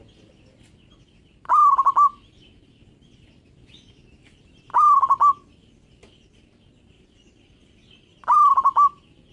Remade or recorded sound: recorded